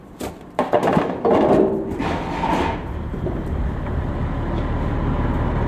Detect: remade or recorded remade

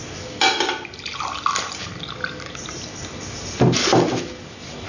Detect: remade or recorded recorded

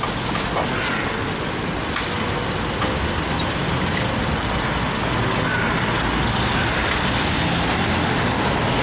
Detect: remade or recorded recorded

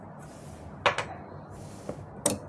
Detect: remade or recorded recorded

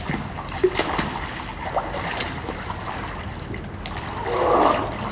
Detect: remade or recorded recorded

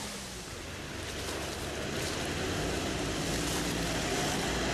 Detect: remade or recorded recorded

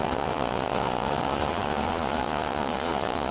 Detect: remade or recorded remade